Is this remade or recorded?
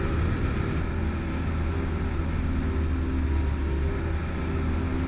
recorded